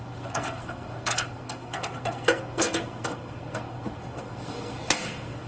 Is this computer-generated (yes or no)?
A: yes